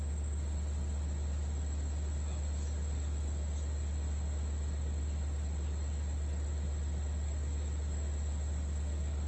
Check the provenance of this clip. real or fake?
real